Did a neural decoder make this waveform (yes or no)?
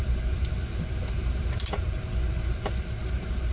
yes